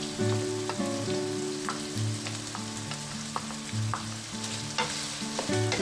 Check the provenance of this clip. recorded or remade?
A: recorded